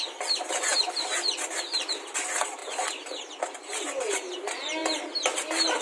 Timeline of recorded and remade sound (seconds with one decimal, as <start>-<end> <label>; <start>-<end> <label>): 0.0-0.7 recorded; 0.7-1.9 remade; 1.9-2.6 recorded; 2.6-3.2 remade; 3.2-5.8 recorded